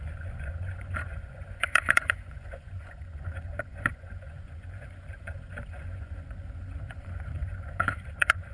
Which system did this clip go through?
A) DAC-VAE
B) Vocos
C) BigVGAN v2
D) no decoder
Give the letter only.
B